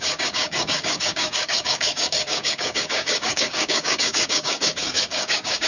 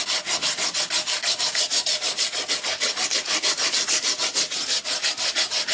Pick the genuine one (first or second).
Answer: second